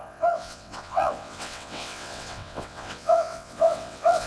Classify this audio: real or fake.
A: fake